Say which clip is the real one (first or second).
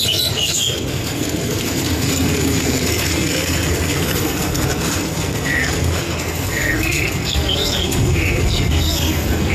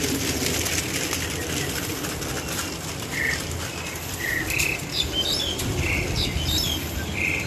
second